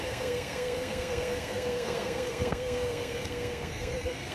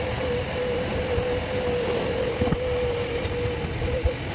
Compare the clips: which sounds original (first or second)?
second